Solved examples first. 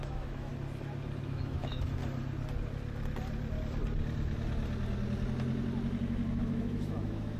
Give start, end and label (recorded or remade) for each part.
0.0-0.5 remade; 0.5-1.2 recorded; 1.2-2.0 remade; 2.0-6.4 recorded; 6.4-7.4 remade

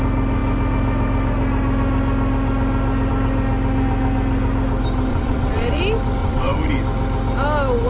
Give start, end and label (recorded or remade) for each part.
0.0-5.1 recorded; 5.1-5.8 remade; 5.8-6.2 recorded; 6.2-6.7 remade; 6.7-7.9 recorded

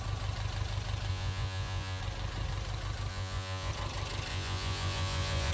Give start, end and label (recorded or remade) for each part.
0.0-1.1 recorded; 1.1-2.0 remade; 2.0-3.1 recorded; 3.1-3.7 remade; 3.7-4.3 recorded; 4.3-5.5 remade

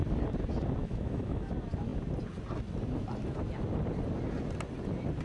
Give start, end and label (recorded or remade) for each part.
0.0-0.8 recorded; 0.8-1.5 remade; 1.5-5.2 recorded

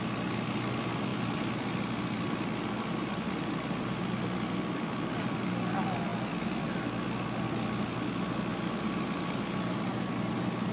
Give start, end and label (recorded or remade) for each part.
0.0-10.7 recorded